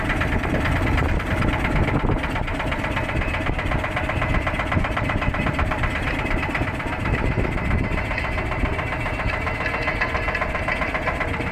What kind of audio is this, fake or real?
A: real